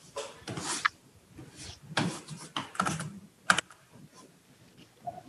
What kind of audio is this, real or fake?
real